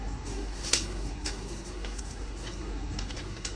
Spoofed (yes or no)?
yes